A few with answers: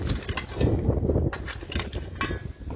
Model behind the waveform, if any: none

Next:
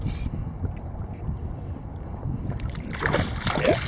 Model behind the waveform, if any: none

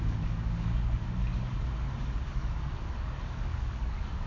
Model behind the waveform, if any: codec, DAC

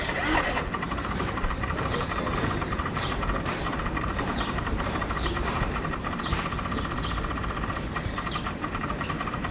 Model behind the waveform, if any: vocoder, BigVGAN v2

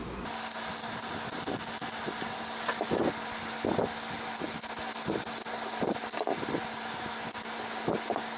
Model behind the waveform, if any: none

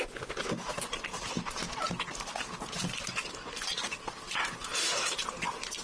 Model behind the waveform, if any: none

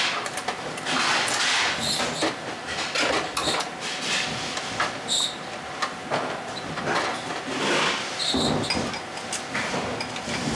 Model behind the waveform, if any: none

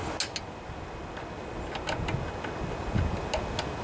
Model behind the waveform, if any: none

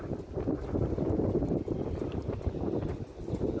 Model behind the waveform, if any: none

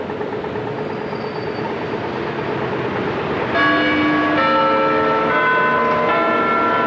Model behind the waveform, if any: none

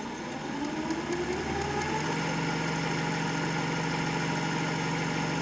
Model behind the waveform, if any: none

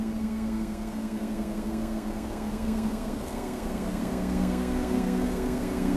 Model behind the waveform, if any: codec, SNAC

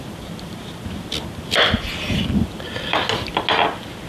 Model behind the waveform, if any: none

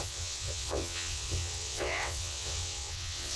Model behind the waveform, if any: vocoder, WaveNeXt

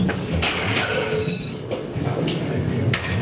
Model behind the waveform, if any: codec, DAC